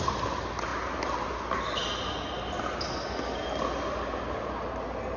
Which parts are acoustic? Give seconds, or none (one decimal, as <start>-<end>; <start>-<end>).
0.0-5.2